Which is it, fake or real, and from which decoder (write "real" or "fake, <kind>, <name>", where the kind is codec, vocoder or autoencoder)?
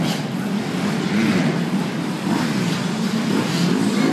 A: real